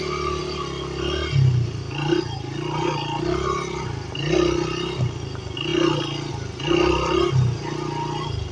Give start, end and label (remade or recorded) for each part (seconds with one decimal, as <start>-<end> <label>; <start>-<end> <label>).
0.0-8.5 recorded